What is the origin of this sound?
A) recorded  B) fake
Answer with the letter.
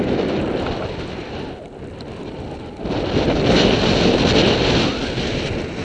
A